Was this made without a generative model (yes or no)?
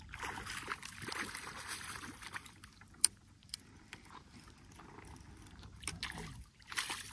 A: no